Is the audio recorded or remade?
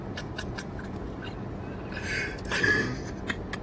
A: recorded